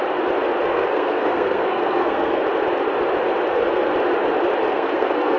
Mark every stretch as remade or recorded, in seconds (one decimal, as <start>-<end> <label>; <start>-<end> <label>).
0.0-0.6 recorded; 0.6-2.4 remade; 2.4-3.5 recorded; 3.5-3.9 remade; 3.9-4.7 recorded; 4.7-5.4 remade